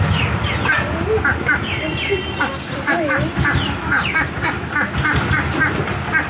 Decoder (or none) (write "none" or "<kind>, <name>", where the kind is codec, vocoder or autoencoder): none